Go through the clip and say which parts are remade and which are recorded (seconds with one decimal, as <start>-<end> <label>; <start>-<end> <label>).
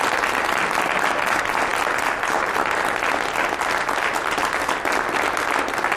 0.0-6.0 recorded